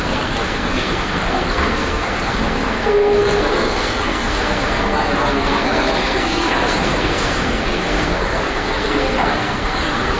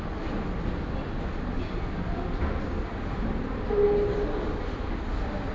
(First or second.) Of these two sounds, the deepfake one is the first